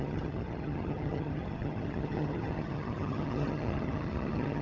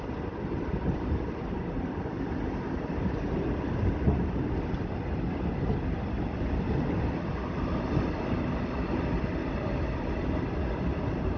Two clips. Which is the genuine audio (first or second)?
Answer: second